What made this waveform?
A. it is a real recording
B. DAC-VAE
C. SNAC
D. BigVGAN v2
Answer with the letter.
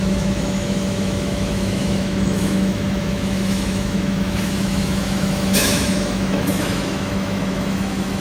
B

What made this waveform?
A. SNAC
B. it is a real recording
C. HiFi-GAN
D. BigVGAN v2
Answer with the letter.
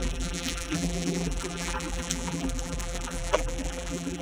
D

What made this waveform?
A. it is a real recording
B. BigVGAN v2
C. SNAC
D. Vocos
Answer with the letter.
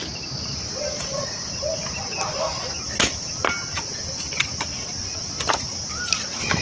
A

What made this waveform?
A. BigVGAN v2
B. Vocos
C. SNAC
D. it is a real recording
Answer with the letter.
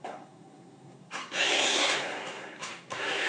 C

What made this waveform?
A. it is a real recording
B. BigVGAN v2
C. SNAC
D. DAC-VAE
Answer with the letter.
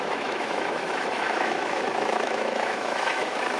D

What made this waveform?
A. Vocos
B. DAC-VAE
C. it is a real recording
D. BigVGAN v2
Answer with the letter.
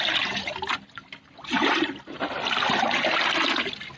C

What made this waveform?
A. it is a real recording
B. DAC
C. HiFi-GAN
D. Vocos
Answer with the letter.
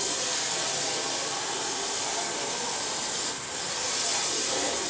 A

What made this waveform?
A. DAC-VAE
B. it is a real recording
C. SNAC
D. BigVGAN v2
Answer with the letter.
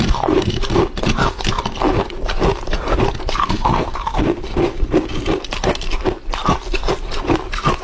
D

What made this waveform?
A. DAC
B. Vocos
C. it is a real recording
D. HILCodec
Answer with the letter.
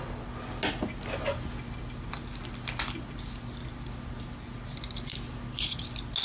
C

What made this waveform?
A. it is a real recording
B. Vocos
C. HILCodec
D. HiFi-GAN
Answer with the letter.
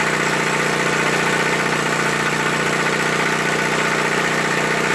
A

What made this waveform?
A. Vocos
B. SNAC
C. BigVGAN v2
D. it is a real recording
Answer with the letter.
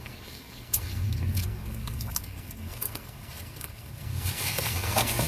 B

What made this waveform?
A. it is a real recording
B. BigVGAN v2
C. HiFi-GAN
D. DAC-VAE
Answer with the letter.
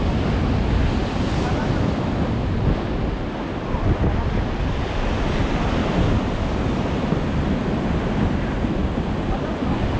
A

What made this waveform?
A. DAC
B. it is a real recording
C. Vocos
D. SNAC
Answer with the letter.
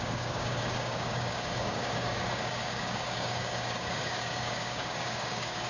A